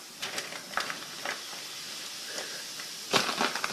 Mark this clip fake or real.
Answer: real